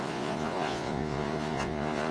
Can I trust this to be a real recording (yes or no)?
no